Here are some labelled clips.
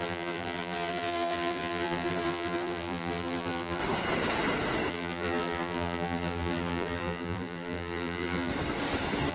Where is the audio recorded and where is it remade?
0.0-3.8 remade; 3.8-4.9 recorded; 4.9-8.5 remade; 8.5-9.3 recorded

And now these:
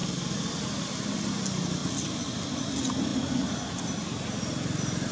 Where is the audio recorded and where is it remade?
0.0-1.2 remade; 1.2-1.8 recorded; 1.8-2.6 remade; 2.6-5.1 recorded

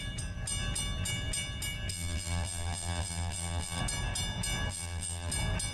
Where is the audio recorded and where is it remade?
0.0-1.9 recorded; 1.9-3.8 remade; 3.8-4.7 recorded; 4.7-5.3 remade; 5.3-5.7 recorded